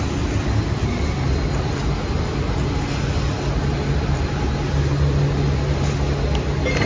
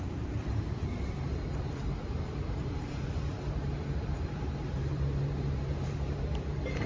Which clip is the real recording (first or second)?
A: first